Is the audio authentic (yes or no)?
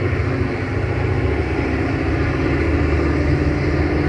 yes